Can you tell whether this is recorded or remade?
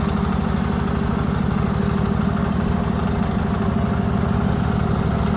recorded